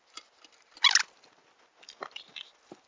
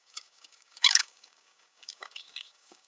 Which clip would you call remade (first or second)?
second